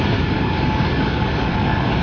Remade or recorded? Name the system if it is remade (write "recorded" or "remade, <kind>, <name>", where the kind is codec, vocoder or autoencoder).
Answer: remade, codec, DAC